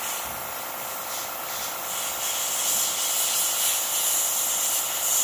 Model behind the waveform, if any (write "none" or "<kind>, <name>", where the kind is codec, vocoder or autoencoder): none